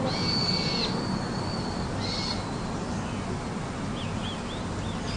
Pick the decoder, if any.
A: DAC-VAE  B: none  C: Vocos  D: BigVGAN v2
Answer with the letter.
B